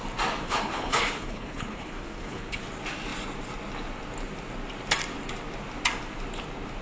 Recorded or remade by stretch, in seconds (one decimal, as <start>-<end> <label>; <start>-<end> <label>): 0.0-0.4 recorded; 0.4-2.6 remade; 2.6-6.8 recorded